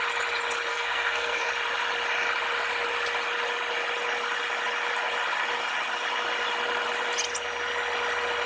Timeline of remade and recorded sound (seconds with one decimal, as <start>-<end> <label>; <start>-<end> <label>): 0.0-0.7 recorded; 0.7-1.5 remade; 1.5-8.5 recorded